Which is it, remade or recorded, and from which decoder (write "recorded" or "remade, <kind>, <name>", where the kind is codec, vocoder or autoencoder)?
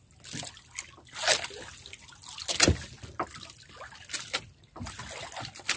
recorded